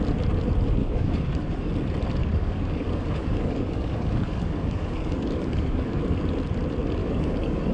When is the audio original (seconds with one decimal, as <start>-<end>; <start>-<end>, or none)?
0.0-0.8; 1.7-2.2; 6.0-7.0